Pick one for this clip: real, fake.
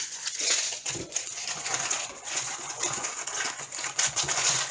fake